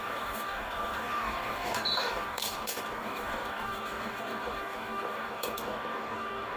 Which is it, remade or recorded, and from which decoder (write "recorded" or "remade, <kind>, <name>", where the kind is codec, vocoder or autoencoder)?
remade, codec, DAC